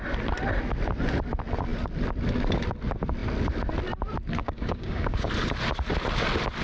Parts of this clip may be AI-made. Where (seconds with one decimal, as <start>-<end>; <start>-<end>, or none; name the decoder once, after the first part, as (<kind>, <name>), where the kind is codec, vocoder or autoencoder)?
4.4-5.3 (codec, DAC)